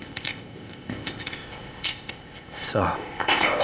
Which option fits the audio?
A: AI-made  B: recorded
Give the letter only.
A